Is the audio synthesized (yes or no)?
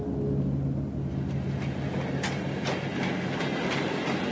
no